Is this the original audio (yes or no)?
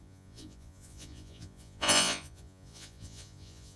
no